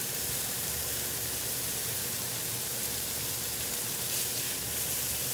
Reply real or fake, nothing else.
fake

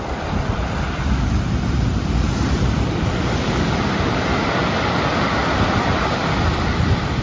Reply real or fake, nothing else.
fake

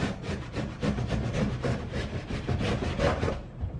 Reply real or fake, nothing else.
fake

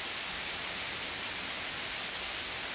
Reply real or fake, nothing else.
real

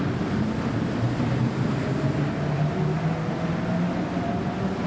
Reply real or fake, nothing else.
real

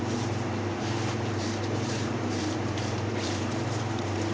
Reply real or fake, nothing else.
fake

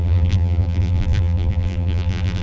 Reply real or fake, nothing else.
fake